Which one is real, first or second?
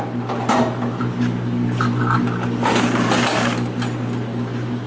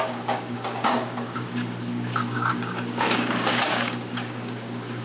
first